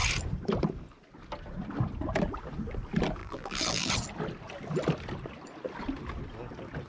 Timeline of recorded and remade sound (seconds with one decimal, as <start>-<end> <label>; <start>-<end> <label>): 0.0-3.2 recorded; 3.2-3.9 remade; 3.9-6.9 recorded